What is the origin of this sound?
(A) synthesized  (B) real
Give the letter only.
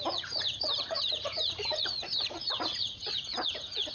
A